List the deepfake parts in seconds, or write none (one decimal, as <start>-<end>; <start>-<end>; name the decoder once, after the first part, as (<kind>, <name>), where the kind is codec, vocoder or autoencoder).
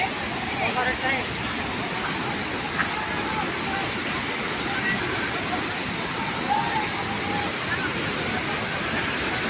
5.8-6.4 (vocoder, BigVGAN v2)